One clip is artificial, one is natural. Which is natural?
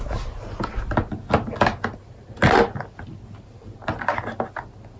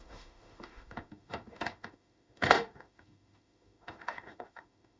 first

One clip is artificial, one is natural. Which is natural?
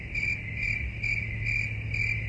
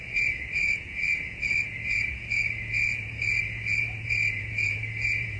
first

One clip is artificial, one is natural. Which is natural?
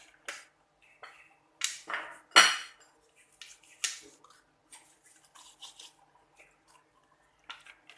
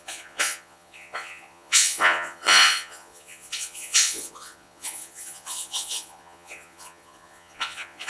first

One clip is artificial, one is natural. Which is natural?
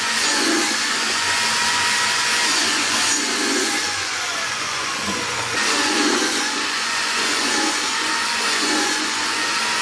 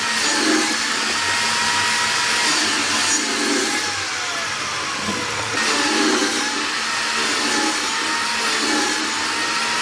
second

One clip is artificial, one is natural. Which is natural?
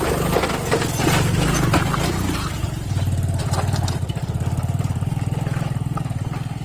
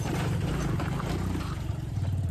first